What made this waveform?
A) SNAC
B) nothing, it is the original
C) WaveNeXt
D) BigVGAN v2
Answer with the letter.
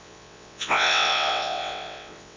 C